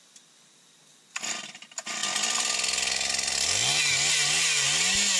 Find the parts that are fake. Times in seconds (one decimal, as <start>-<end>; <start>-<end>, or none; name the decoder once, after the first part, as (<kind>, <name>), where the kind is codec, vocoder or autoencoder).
none